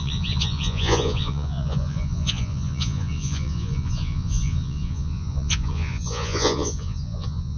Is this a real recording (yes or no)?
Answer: no